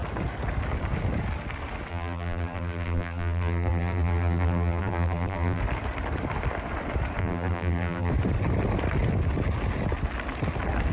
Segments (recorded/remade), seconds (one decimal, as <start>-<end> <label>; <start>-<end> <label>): 0.0-1.9 recorded; 1.9-5.6 remade; 5.6-7.2 recorded; 7.2-8.1 remade; 8.1-10.9 recorded